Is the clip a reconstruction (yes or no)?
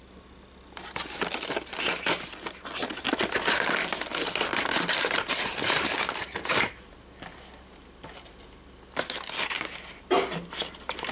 no